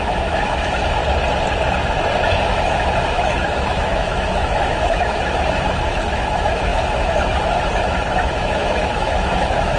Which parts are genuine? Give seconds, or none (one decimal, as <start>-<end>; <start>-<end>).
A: 1.0-2.4